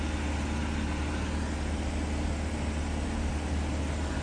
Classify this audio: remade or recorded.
recorded